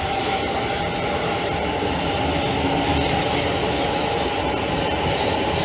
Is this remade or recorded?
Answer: recorded